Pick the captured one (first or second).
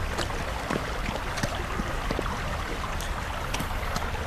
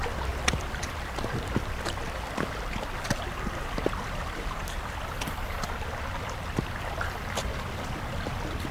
second